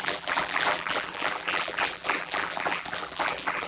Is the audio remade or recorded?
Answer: remade